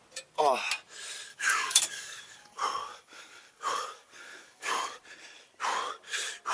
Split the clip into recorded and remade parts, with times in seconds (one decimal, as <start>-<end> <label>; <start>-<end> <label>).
0.0-1.3 recorded; 1.3-5.0 remade; 5.0-6.5 recorded